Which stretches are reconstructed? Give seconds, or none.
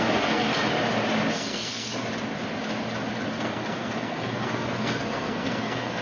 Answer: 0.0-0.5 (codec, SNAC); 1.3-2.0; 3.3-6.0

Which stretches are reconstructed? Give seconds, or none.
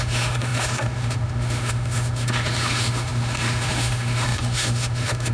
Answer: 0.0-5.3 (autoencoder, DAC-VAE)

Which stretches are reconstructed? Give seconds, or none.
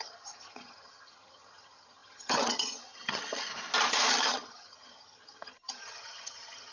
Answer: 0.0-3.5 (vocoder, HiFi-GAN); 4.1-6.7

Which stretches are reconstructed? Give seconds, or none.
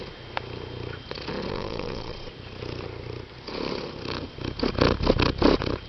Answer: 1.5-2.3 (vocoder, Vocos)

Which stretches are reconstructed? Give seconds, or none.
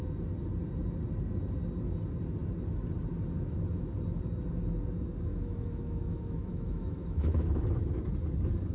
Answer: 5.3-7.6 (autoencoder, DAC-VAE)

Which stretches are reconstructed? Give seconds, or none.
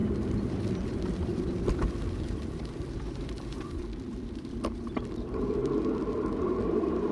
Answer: 0.0-5.6 (vocoder, BigVGAN v2); 6.3-7.1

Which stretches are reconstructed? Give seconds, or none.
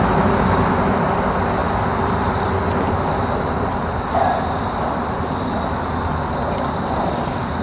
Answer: none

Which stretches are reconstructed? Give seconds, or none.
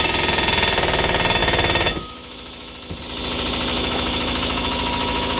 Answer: 1.4-3.0 (autoencoder, DAC-VAE); 3.7-5.4